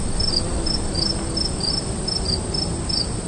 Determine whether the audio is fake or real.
real